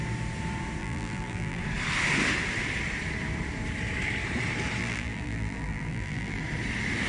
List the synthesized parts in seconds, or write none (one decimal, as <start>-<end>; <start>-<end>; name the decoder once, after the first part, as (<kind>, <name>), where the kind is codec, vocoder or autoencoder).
0.8-1.6 (vocoder, BigVGAN v2); 4.8-6.4